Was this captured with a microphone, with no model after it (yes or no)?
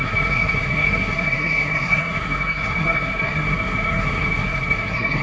no